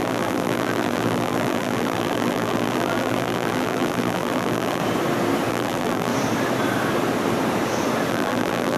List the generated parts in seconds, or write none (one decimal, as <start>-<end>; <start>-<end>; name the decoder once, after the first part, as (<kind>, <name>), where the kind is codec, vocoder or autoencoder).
0.0-4.8 (vocoder, BigVGAN v2); 5.5-6.1; 8.1-8.8